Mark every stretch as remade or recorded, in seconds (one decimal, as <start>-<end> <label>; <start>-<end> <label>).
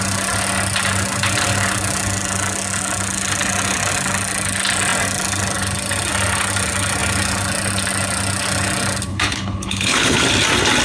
0.0-9.1 recorded; 9.1-10.2 remade; 10.2-10.8 recorded